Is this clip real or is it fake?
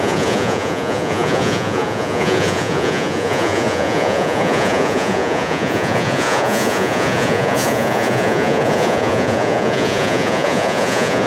fake